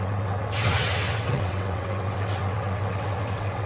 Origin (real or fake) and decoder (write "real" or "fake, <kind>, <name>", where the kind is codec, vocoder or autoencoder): fake, vocoder, WaveNeXt